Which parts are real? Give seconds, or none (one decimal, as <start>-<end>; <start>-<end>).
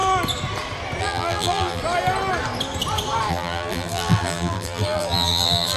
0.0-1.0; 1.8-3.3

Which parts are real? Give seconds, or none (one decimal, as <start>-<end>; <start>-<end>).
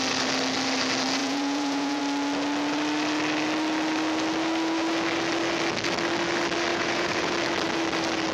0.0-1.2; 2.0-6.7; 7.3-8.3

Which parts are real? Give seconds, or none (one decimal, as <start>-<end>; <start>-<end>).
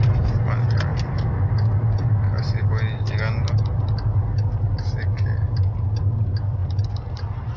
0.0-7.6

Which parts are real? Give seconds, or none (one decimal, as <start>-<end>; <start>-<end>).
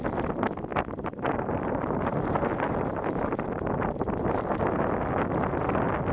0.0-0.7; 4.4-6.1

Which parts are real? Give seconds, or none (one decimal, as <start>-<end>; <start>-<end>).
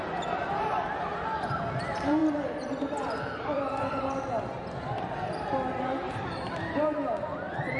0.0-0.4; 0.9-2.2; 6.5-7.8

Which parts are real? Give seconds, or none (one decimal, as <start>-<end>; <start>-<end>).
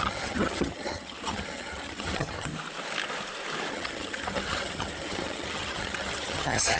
2.5-3.7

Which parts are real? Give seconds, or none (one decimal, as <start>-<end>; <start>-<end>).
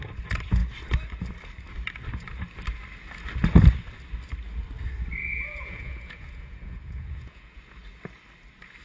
0.0-5.2; 7.6-8.8